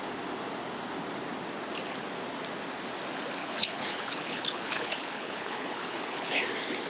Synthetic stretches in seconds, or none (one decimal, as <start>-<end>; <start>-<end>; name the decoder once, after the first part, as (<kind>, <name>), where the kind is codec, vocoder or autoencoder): 3.4-6.4 (codec, HILCodec)